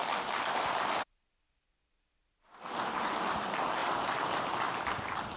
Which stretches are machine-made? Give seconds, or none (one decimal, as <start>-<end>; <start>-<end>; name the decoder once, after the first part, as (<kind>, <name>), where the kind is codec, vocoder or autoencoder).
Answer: none